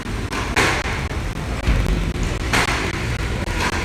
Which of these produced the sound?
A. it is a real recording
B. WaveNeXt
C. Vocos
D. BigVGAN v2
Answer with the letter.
A